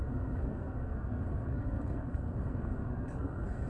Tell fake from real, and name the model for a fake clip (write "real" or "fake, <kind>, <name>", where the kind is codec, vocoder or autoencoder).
fake, codec, SNAC